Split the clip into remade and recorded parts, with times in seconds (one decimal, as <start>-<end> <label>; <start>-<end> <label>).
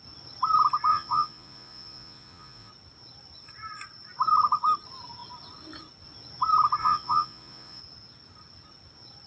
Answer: 0.0-0.9 recorded; 0.9-2.7 remade; 2.7-6.8 recorded; 6.8-7.8 remade; 7.8-9.3 recorded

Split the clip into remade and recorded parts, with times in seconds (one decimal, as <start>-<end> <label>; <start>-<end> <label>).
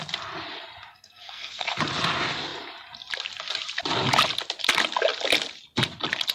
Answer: 0.0-0.9 recorded; 0.9-1.8 remade; 1.8-6.3 recorded